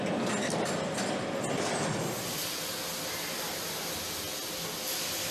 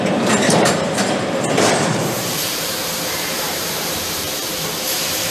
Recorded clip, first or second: first